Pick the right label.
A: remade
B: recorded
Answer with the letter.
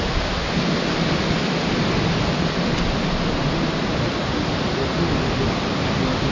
B